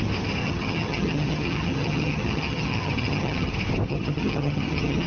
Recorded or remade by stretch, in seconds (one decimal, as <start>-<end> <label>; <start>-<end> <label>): 0.0-0.4 recorded; 0.4-3.5 remade; 3.5-3.9 recorded; 3.9-5.1 remade